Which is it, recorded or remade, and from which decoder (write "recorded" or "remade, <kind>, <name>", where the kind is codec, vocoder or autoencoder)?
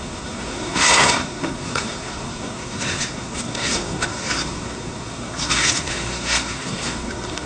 remade, codec, SNAC